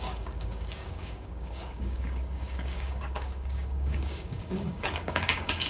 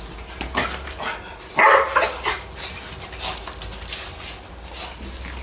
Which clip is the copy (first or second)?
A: first